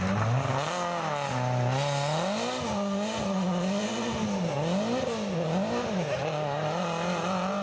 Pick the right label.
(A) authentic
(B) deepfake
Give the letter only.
A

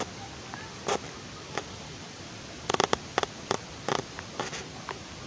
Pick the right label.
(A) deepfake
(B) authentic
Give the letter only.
B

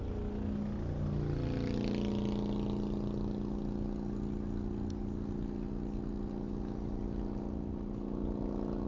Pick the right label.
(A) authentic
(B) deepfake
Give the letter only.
A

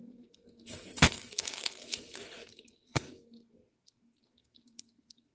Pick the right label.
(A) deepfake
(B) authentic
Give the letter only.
A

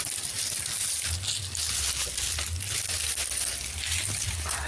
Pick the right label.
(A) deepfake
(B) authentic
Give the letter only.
B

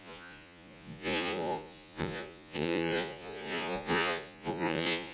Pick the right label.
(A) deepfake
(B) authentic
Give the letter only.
A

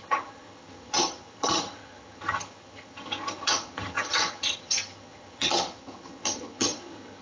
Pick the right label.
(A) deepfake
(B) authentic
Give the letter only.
A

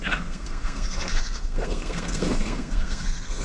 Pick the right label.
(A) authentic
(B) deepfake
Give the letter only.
B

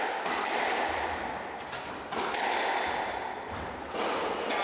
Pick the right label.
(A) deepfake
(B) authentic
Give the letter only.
B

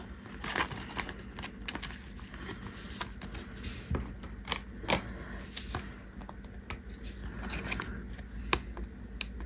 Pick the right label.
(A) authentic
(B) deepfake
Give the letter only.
A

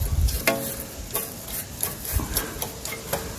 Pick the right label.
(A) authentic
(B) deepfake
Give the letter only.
A